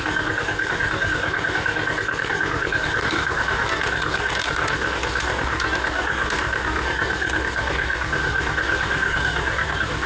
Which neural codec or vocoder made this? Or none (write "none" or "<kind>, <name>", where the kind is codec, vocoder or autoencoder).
codec, DAC